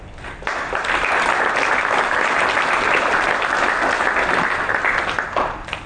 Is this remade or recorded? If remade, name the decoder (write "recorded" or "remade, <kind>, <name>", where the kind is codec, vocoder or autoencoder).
recorded